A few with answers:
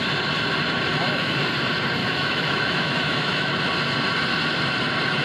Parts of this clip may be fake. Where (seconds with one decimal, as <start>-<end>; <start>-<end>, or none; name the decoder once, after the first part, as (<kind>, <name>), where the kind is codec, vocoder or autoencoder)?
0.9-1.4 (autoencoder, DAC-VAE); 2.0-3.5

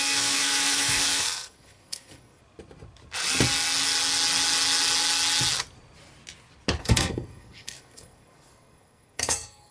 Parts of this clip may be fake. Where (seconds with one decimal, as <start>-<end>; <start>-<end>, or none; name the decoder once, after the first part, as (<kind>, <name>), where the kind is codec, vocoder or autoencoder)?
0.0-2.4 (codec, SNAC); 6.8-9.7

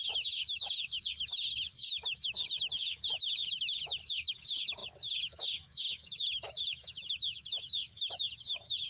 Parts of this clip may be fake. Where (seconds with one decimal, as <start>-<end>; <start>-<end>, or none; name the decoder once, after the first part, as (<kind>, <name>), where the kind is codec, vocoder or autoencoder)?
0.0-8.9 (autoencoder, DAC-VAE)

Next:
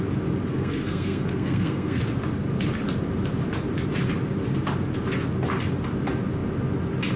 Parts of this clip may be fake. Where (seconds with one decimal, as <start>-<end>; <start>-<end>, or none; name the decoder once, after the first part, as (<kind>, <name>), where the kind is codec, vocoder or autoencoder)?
0.5-2.0 (codec, SNAC)

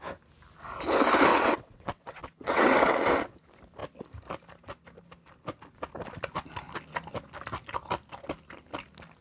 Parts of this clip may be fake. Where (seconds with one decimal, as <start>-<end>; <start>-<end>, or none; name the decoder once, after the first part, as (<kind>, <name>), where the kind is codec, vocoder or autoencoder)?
1.3-3.4 (vocoder, WaveNeXt)

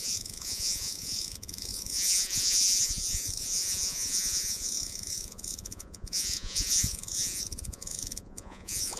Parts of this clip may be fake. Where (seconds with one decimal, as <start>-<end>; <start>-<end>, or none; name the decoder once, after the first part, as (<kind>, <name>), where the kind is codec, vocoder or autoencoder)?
0.0-9.0 (vocoder, Vocos)

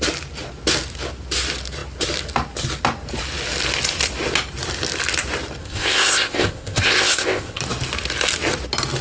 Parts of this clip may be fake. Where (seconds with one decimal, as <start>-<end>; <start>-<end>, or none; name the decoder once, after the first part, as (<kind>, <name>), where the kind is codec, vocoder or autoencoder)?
5.6-7.6 (codec, ZipCodec)

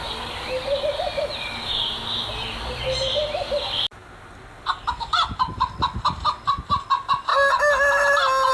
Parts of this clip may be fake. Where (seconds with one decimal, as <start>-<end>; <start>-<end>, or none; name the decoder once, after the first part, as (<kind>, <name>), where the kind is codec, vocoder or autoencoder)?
none